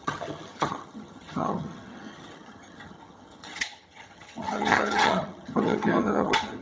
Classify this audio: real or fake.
fake